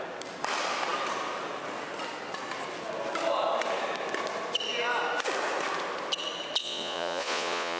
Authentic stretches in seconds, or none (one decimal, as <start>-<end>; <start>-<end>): 0.0-6.6